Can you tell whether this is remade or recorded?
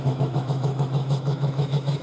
remade